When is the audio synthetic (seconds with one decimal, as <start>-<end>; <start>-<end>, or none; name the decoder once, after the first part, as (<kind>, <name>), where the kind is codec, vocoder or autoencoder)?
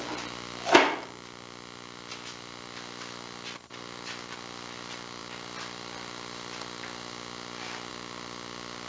none